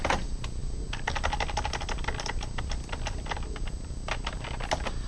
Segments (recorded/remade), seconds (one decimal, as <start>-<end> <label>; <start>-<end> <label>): 0.0-5.1 recorded